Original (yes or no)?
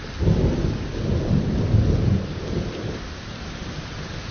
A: yes